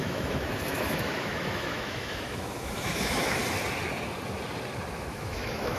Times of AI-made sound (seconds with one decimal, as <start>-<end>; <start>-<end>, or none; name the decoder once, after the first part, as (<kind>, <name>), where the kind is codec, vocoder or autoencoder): 0.0-3.4 (autoencoder, DAC-VAE); 4.9-5.8